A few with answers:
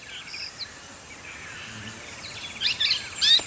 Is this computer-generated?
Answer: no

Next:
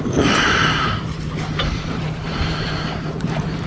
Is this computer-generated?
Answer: yes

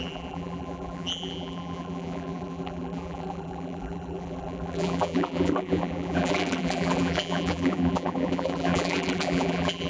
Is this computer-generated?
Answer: yes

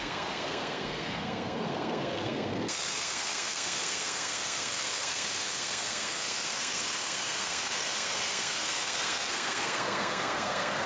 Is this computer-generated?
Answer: yes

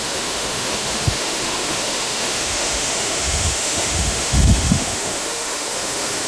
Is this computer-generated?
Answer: yes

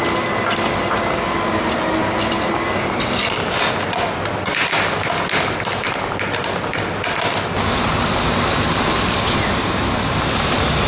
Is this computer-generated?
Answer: no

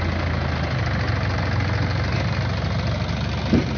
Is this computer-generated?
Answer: no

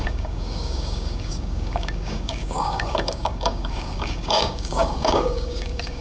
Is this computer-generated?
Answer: yes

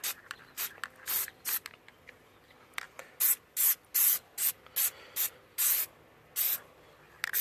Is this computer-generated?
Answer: no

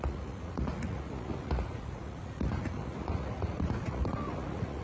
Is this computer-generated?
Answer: yes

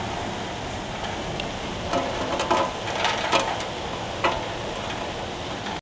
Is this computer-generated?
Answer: no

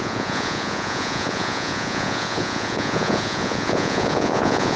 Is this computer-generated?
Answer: yes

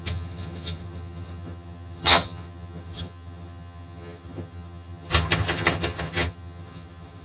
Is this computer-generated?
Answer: yes